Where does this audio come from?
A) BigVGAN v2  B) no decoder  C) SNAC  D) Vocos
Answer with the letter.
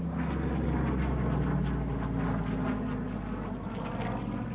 B